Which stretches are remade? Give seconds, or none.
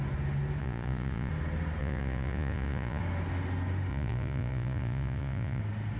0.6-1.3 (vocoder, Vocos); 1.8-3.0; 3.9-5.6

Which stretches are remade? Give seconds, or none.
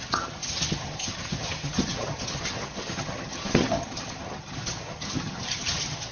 0.0-6.1 (vocoder, HiFi-GAN)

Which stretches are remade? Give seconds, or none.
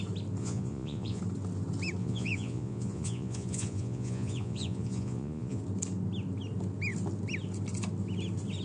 0.4-1.2 (vocoder, Vocos); 2.0-5.6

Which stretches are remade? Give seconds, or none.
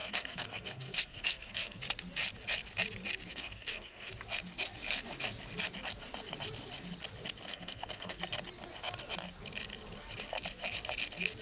0.0-1.8 (codec, SNAC); 3.3-4.1; 7.5-8.2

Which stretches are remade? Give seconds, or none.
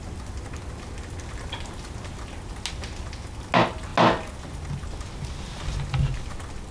none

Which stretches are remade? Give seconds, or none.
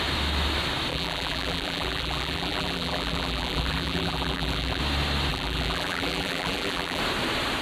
0.9-4.8 (vocoder, BigVGAN v2); 5.3-7.0